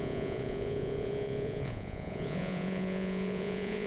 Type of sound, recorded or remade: remade